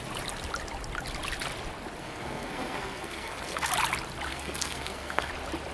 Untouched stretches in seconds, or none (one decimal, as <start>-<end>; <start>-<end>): 0.0-2.0; 3.7-4.3; 5.3-5.7